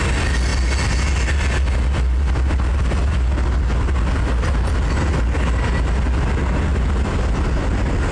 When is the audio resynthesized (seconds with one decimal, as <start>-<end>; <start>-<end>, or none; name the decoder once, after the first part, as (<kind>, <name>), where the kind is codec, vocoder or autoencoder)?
none